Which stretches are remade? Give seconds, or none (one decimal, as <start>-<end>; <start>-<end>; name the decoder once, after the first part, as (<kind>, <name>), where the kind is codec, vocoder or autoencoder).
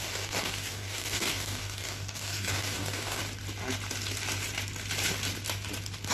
0.0-3.2 (codec, DAC)